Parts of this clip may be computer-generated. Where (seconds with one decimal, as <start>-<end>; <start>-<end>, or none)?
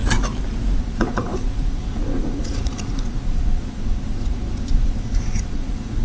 0.8-6.0